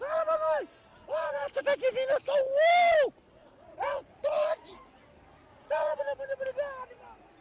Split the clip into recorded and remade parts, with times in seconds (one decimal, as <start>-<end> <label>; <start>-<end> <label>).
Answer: 0.0-0.9 recorded; 0.9-1.6 remade; 1.6-3.4 recorded; 3.4-4.8 remade; 4.8-5.4 recorded; 5.4-6.0 remade; 6.0-7.4 recorded